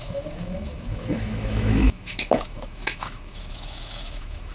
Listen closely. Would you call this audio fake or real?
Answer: fake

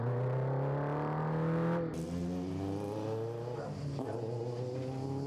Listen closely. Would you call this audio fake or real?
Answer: real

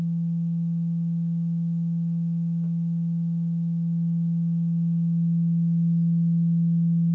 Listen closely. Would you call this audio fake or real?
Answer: real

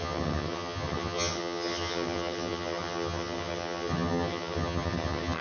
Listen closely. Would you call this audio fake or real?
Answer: fake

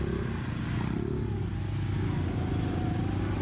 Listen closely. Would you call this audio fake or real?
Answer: real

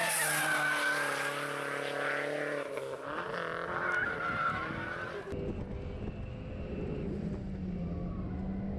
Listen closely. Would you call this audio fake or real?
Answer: real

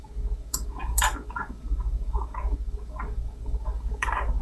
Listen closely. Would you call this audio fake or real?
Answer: fake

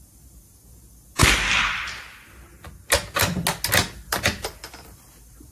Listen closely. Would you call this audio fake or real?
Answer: real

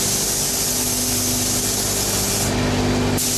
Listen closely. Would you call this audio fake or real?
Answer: real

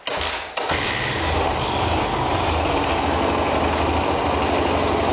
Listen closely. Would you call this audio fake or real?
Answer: real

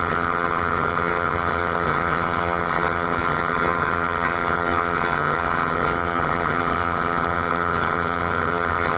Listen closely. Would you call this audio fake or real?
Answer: fake